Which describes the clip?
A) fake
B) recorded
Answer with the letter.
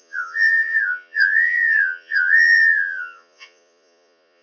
A